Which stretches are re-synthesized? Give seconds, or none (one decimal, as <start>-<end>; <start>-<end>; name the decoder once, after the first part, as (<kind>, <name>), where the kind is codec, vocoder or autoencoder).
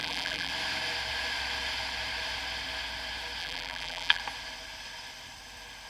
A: 0.0-0.5 (vocoder, BigVGAN v2); 3.4-4.2